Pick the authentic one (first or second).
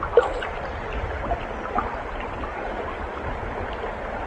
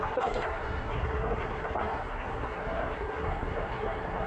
first